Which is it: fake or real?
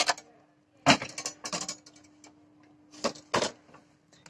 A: real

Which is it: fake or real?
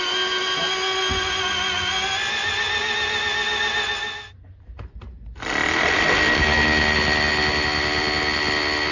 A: real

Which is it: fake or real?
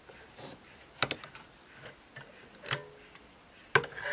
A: real